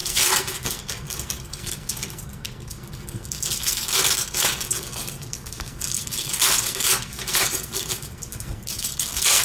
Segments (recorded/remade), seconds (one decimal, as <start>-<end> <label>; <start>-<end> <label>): 0.0-9.4 remade